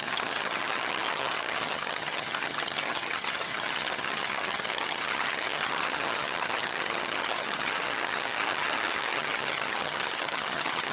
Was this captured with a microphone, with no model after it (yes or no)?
no